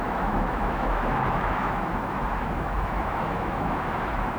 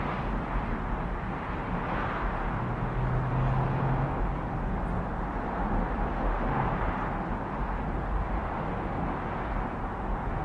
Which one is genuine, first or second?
second